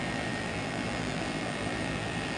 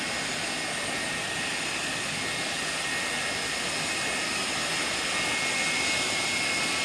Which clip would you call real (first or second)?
second